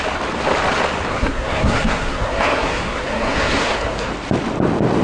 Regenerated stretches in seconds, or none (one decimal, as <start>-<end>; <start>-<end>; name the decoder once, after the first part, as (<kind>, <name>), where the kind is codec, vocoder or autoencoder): 1.1-4.1 (codec, SNAC)